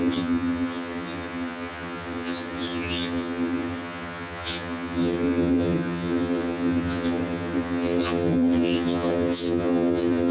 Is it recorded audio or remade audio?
remade